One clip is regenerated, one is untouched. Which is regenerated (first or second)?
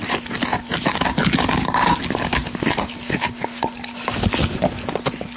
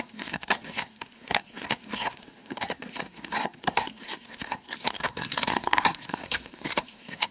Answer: second